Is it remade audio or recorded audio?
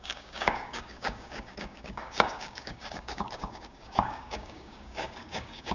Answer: remade